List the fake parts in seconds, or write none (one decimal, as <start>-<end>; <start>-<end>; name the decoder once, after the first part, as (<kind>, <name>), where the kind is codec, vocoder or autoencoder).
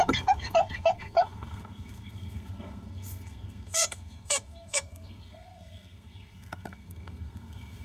0.0-7.8 (codec, SNAC)